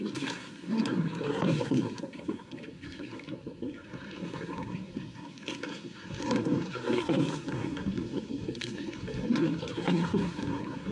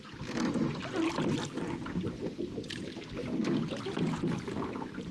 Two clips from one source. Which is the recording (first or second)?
second